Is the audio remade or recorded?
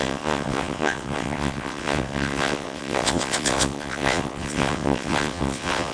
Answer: remade